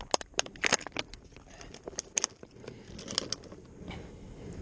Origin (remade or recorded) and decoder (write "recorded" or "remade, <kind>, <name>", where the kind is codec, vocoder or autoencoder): recorded